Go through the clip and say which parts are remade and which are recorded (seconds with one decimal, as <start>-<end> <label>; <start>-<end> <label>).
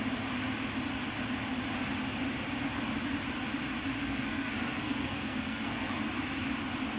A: 0.0-4.0 recorded; 4.0-6.0 remade; 6.0-7.0 recorded